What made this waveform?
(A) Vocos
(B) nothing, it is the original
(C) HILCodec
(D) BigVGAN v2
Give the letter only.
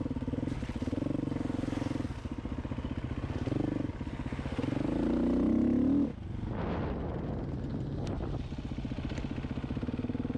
B